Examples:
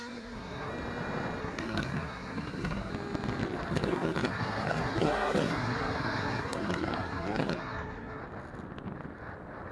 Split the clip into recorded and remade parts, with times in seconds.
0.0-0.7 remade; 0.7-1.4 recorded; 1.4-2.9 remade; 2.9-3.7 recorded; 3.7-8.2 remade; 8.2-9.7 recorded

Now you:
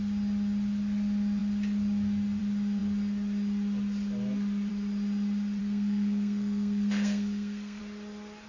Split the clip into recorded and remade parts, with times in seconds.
0.0-5.6 recorded; 5.6-7.8 remade; 7.8-8.5 recorded

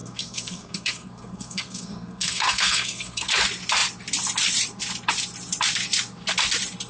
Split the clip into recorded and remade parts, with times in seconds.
0.0-3.3 remade; 3.3-6.9 recorded